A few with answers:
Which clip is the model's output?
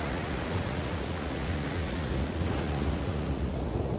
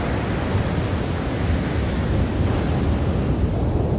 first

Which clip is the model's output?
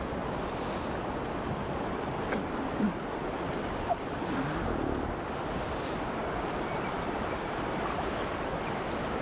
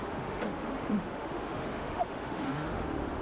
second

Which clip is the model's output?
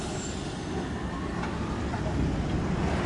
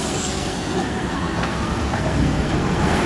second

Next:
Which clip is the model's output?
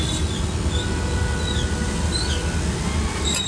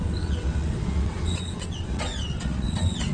second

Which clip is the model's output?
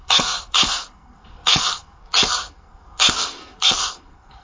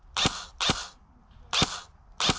first